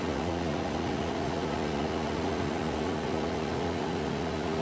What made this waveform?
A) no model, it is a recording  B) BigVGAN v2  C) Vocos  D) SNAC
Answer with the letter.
C